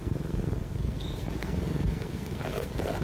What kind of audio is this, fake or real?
fake